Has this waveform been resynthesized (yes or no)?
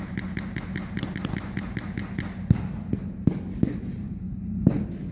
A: no